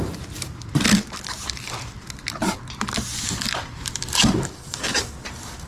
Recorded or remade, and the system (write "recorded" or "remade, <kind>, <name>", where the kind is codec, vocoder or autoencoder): remade, vocoder, BigVGAN v2